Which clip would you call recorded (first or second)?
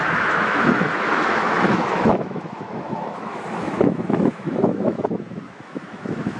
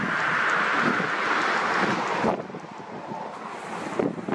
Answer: second